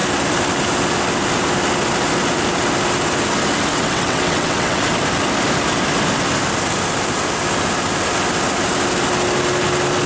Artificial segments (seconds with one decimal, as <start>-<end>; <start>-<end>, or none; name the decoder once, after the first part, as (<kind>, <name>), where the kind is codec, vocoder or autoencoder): 3.7-4.8 (vocoder, WaveNeXt)